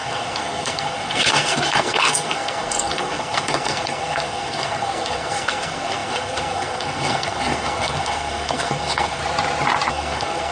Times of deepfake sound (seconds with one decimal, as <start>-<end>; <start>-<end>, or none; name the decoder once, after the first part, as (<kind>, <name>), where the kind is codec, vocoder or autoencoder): 0.0-9.2 (codec, SNAC); 9.9-10.5